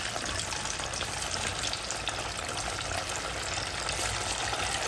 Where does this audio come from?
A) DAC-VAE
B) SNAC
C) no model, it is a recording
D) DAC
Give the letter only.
C